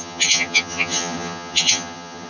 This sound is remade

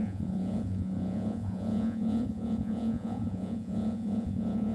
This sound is remade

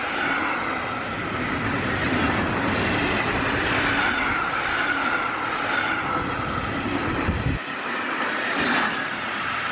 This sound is remade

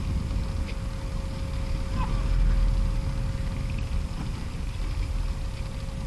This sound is recorded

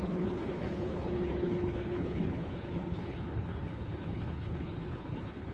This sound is remade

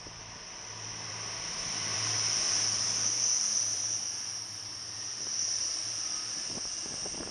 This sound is remade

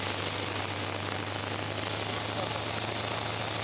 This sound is recorded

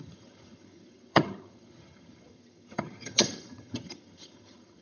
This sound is remade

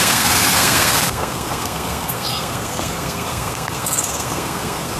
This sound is remade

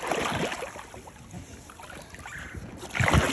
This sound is recorded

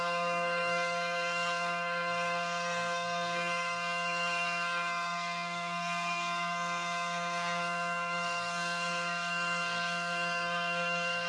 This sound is remade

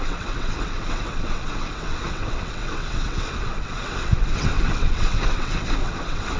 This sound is remade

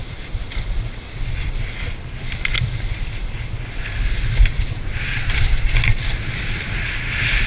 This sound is recorded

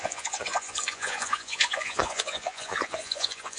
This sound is remade